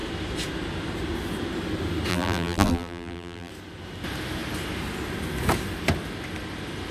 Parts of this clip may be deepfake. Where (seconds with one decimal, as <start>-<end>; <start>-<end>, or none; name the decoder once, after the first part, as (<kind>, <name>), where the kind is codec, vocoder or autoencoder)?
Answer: 2.1-3.5 (vocoder, BigVGAN v2)